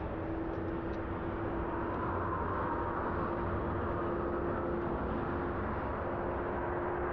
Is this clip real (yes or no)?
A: yes